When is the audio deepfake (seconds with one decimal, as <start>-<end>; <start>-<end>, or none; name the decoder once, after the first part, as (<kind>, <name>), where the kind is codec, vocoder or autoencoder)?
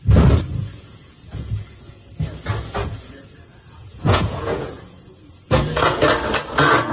0.6-2.1 (vocoder, Vocos); 2.8-6.0